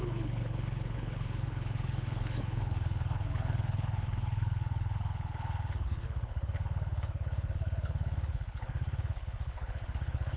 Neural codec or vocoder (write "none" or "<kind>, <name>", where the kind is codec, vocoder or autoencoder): codec, HILCodec